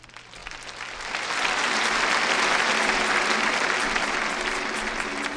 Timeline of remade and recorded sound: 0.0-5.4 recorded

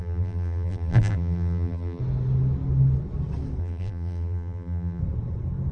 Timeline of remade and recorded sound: 0.0-2.0 remade; 2.0-3.6 recorded; 3.6-5.0 remade; 5.0-5.7 recorded

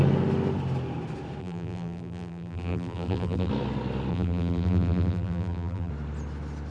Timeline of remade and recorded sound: 0.0-1.4 recorded; 1.4-3.5 remade; 3.5-4.1 recorded; 4.1-5.9 remade; 5.9-6.7 recorded

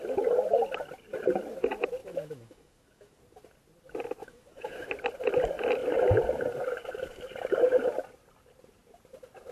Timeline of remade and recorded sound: 0.0-2.0 recorded; 2.0-3.2 remade; 3.2-4.2 recorded; 4.2-4.9 remade; 4.9-9.5 recorded

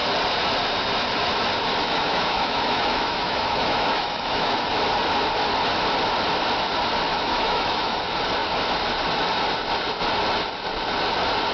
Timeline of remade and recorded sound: 0.0-1.8 recorded; 1.8-4.8 remade; 4.8-7.1 recorded; 7.1-8.0 remade; 8.0-11.5 recorded

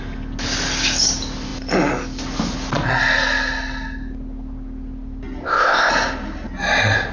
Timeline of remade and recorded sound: 0.0-5.4 recorded; 5.4-5.9 remade; 5.9-7.1 recorded

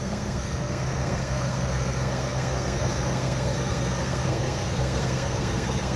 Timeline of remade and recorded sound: 0.0-6.0 remade

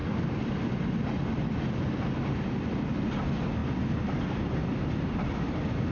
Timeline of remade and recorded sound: 0.0-5.9 recorded